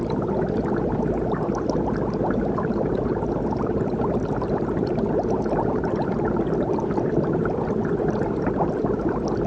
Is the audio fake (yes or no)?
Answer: no